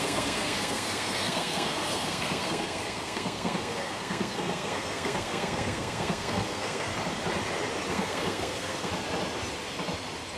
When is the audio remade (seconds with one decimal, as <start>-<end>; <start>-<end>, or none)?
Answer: 0.0-6.9; 7.9-8.9